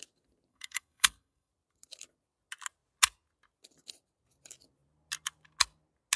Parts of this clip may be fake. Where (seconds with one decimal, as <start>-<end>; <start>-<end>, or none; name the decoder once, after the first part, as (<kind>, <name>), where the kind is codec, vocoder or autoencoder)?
0.5-1.5 (codec, SNAC)